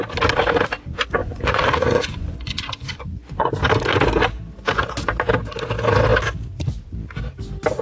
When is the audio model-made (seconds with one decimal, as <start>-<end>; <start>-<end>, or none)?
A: 1.2-3.5